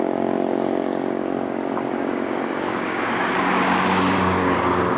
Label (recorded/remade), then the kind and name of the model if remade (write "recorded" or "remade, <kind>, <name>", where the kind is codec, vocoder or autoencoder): remade, codec, DAC